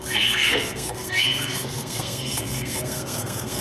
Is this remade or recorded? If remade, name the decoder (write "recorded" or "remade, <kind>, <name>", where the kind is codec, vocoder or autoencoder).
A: remade, codec, SNAC